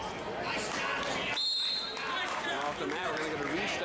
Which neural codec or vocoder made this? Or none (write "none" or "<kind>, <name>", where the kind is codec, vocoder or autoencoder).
none